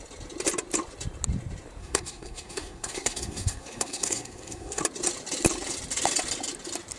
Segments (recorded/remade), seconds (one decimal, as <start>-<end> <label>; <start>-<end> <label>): 0.0-1.8 recorded; 1.8-4.8 remade; 4.8-7.0 recorded